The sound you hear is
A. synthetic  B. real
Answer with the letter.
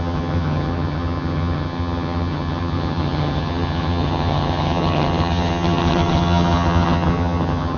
A